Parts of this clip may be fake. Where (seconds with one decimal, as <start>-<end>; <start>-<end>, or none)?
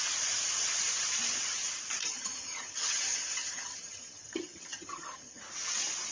2.0-5.4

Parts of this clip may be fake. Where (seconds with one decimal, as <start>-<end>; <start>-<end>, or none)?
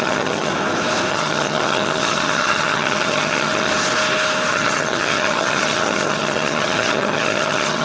0.0-0.5; 1.1-3.7; 4.5-7.8